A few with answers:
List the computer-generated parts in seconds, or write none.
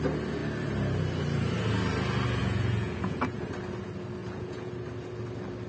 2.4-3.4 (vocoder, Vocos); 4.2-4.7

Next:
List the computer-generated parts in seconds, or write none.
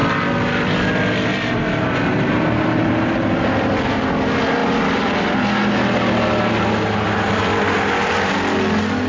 none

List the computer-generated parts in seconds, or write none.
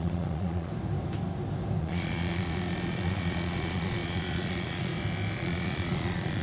0.0-0.7 (vocoder, Vocos); 1.8-4.9; 5.4-6.4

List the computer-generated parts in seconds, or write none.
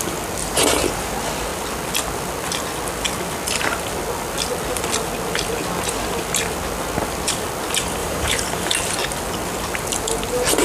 0.4-1.1 (vocoder, BigVGAN v2); 8.0-8.7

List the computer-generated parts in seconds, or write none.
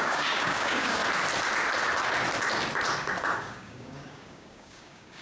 0.0-1.0 (codec, DAC); 3.4-5.2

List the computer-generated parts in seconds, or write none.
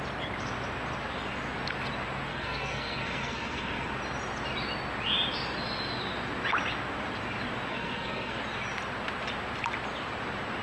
2.3-3.9 (codec, SNAC); 7.7-8.4